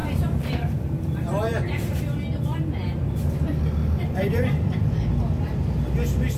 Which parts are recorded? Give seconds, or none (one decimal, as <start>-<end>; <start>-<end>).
2.0-4.0; 4.7-6.4

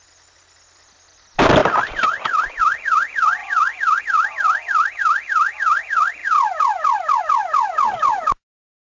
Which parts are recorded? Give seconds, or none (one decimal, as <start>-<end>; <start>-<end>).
0.0-1.6; 2.6-8.8